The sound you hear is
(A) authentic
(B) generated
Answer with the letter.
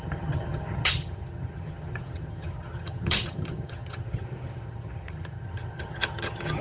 B